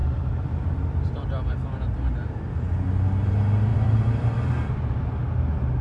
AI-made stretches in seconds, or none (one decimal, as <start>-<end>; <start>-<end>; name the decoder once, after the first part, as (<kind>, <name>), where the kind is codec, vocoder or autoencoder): 0.0-2.6 (vocoder, BigVGAN v2); 3.7-5.1